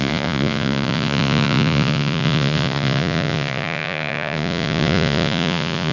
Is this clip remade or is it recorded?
remade